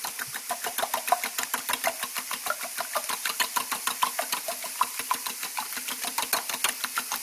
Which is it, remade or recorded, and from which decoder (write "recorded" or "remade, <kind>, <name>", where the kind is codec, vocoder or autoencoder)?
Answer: recorded